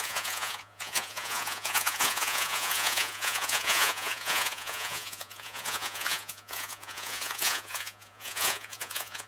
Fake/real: fake